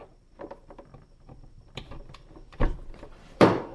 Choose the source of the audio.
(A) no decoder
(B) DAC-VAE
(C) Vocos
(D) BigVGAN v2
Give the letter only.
D